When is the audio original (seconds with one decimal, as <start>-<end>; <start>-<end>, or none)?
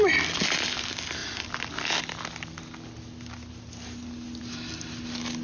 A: 0.0-5.4